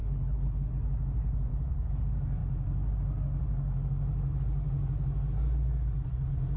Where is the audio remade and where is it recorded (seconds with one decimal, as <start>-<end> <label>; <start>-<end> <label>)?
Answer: 0.0-0.7 remade; 0.7-1.5 recorded; 1.5-2.0 remade; 2.0-6.6 recorded